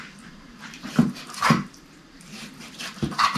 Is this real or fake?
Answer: fake